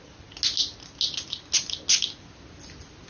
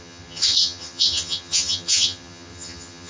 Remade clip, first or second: second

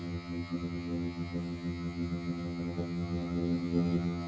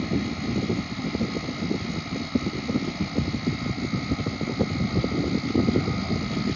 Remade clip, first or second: first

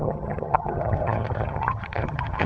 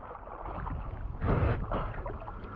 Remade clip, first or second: first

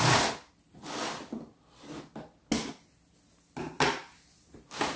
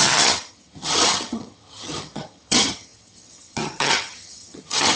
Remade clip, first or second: second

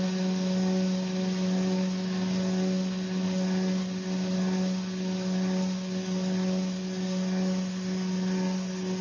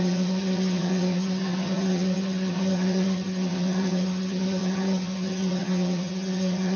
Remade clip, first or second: second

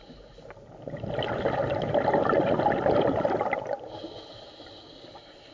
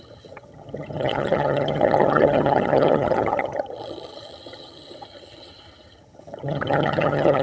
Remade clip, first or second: second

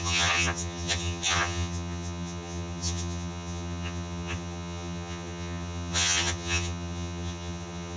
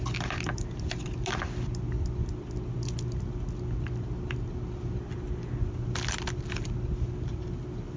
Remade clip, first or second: first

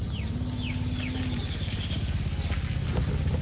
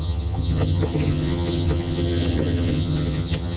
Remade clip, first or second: second